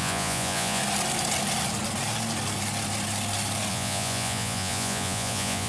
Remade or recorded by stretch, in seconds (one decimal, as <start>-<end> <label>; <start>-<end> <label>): 0.0-0.8 remade; 0.8-3.7 recorded; 3.7-5.7 remade